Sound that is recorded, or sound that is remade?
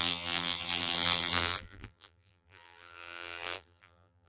remade